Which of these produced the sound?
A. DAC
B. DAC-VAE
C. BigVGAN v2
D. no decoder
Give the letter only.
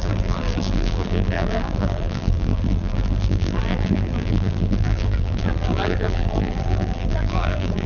C